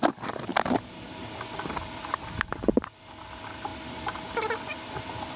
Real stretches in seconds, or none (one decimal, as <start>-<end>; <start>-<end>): 0.0-5.4